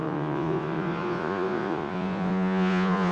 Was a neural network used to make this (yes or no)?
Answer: yes